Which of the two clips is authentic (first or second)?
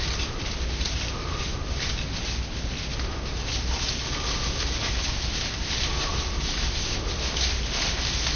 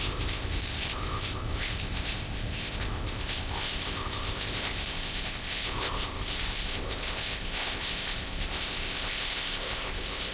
first